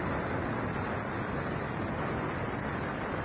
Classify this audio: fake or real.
real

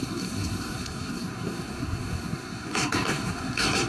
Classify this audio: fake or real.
fake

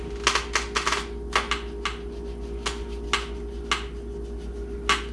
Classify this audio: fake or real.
real